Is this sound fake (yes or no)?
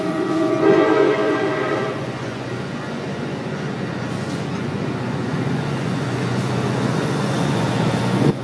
yes